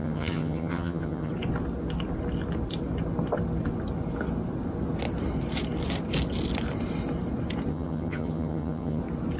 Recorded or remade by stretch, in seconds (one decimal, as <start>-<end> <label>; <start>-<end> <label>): 0.0-1.3 remade; 1.3-7.7 recorded; 7.7-9.0 remade; 9.0-9.4 recorded